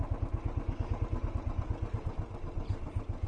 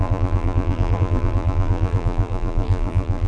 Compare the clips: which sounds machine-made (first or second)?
second